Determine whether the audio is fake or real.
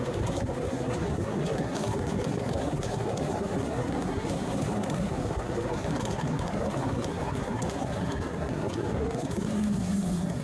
fake